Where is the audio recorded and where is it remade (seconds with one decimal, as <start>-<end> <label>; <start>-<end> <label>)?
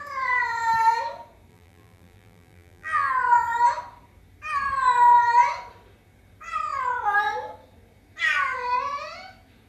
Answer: 0.0-1.5 recorded; 1.5-3.1 remade; 3.1-9.7 recorded